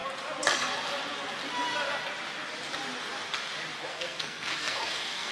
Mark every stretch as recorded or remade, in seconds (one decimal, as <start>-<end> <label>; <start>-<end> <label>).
0.0-3.9 recorded; 3.9-5.3 remade